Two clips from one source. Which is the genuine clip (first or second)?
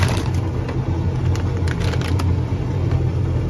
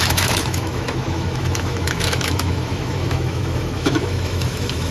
first